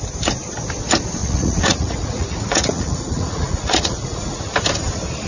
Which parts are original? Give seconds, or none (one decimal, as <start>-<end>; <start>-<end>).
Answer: 0.0-1.2; 4.4-5.3